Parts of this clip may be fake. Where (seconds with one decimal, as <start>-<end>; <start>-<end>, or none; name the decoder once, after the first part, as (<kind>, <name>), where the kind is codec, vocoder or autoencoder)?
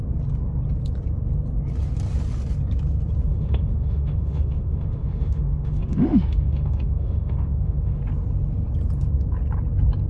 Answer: 3.3-8.0 (autoencoder, DAC-VAE)